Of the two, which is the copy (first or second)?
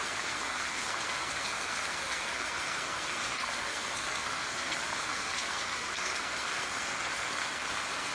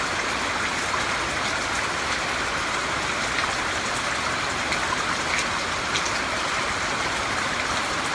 first